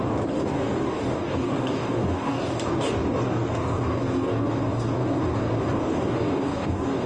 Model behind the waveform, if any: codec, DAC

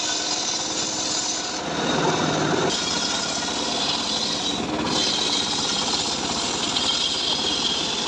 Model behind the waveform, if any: none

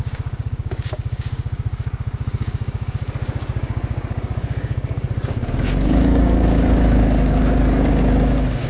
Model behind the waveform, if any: codec, DAC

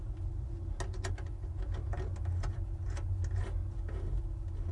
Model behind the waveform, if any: none